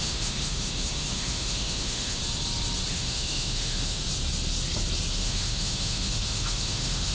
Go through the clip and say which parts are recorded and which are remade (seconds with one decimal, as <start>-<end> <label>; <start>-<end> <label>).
0.0-2.2 remade; 2.2-2.9 recorded; 2.9-4.0 remade; 4.0-5.1 recorded; 5.1-7.1 remade